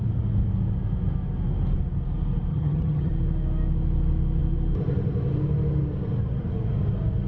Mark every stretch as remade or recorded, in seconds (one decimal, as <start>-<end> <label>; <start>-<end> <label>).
0.0-2.5 recorded; 2.5-3.1 remade; 3.1-7.3 recorded